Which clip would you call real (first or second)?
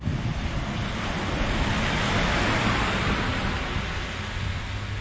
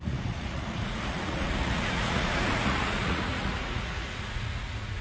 first